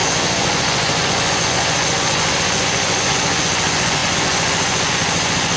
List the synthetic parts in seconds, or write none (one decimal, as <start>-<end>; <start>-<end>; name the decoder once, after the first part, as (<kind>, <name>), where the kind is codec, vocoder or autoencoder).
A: 0.0-5.6 (vocoder, Vocos)